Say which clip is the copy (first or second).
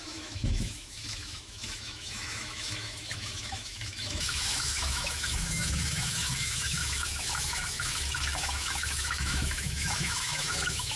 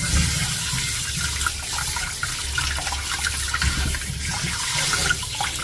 first